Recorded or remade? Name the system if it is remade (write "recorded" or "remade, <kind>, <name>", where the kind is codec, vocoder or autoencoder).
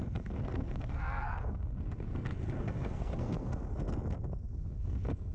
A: remade, codec, SNAC